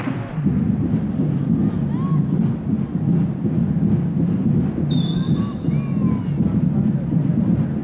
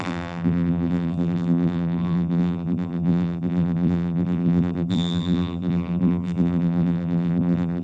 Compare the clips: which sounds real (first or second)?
first